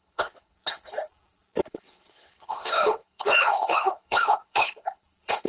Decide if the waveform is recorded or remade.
remade